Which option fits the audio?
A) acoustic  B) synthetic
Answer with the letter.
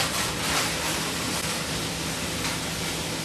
A